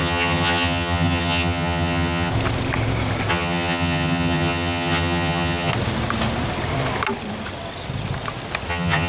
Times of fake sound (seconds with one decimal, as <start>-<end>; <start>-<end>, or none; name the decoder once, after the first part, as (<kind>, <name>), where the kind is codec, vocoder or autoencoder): 0.0-2.3 (vocoder, HiFi-GAN); 3.3-5.7; 8.7-9.1